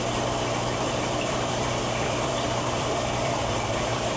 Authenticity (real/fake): fake